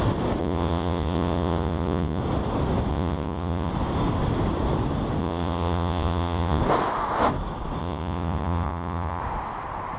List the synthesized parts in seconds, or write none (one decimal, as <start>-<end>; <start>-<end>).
0.4-2.2; 2.9-3.7; 5.2-6.6; 7.8-9.2